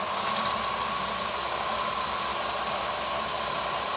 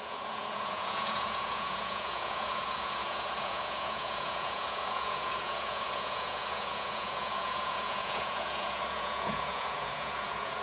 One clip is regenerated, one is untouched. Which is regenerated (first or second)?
second